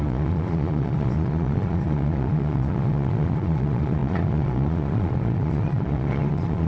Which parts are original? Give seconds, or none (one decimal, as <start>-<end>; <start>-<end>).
none